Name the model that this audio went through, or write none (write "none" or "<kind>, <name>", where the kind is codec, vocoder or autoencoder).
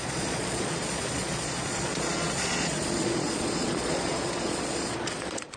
vocoder, Vocos